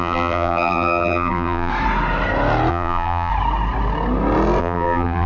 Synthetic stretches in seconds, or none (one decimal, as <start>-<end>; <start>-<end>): 0.0-1.7; 2.7-3.3; 4.6-5.3